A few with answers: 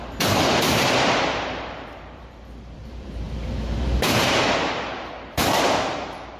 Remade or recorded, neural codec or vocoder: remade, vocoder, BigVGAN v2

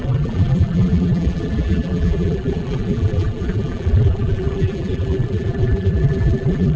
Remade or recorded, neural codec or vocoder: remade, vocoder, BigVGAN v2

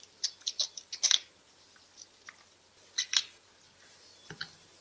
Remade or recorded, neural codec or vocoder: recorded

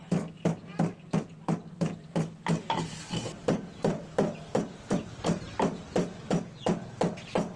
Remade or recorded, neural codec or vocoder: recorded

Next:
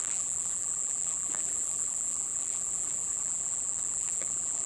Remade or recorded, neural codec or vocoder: remade, vocoder, BigVGAN v2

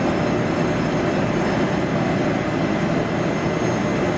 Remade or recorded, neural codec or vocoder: recorded